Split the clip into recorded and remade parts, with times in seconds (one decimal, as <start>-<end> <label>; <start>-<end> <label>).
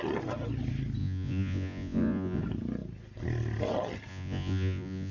0.0-1.0 recorded; 1.0-2.4 remade; 2.4-4.1 recorded; 4.1-5.1 remade